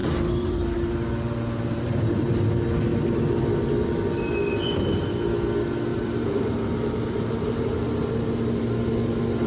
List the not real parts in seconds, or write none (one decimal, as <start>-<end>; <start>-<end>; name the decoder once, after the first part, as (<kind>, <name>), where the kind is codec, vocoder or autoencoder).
0.0-2.1 (vocoder, BigVGAN v2); 2.9-4.2; 5.9-7.7